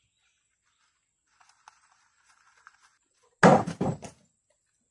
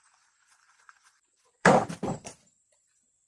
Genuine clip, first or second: first